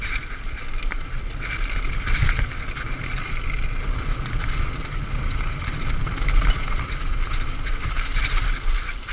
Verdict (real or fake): real